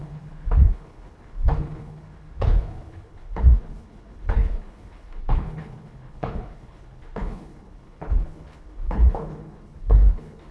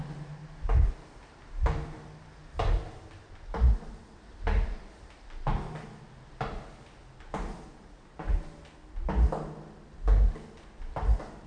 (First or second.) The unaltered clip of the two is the second